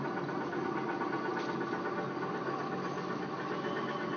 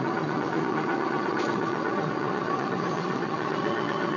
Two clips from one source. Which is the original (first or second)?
first